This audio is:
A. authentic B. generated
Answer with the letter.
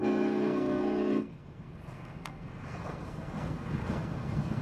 B